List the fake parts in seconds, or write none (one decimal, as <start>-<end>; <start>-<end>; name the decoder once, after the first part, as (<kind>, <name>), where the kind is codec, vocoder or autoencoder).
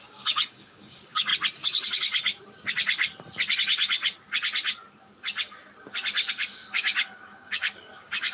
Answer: 0.0-1.3 (codec, DAC); 6.3-8.3